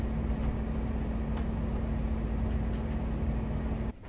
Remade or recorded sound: recorded